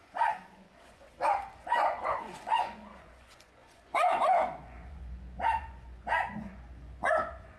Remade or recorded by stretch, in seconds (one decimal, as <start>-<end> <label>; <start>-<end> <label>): 0.0-7.6 remade